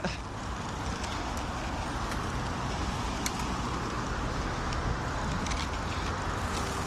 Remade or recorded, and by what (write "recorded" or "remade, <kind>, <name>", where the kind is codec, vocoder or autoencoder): recorded